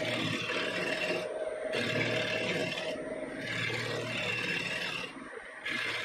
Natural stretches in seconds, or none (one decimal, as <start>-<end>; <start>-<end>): 2.6-4.3; 5.1-6.0